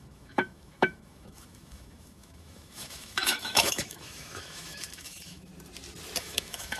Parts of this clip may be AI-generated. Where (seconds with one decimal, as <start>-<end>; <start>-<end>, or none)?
0.0-5.5; 6.2-6.8